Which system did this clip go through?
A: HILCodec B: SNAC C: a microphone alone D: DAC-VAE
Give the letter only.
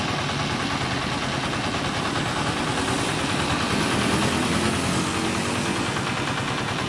C